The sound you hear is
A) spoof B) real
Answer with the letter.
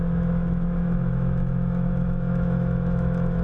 A